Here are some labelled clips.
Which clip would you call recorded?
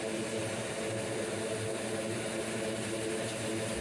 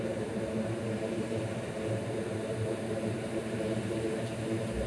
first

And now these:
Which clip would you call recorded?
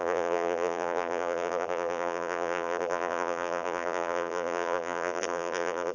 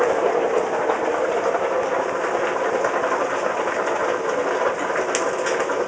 second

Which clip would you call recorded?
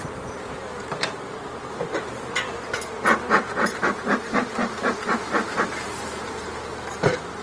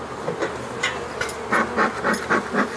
second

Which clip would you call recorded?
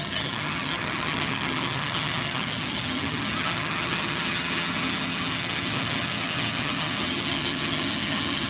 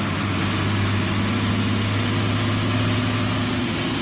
second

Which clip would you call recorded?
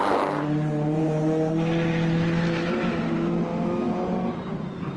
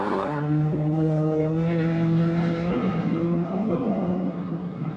first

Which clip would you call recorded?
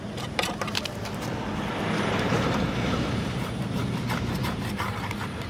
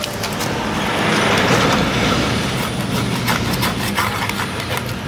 second